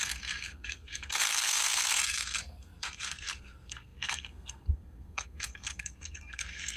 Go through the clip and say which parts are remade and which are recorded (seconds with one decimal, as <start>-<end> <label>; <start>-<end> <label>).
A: 0.0-6.8 remade

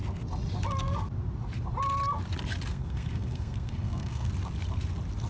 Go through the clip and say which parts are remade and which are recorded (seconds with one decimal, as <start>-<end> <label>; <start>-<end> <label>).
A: 0.0-2.7 recorded; 2.7-4.3 remade; 4.3-5.3 recorded

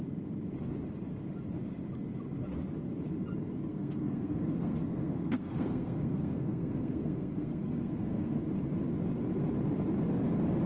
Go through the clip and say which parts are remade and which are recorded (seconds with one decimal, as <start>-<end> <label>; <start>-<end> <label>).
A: 0.0-3.7 recorded; 3.7-8.4 remade; 8.4-10.7 recorded

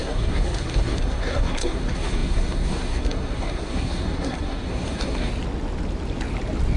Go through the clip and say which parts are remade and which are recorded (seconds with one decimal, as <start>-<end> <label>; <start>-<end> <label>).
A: 0.0-5.3 remade; 5.3-6.8 recorded

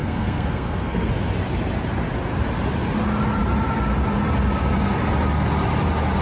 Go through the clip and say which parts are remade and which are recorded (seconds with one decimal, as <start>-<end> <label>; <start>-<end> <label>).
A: 0.0-1.1 remade; 1.1-6.2 recorded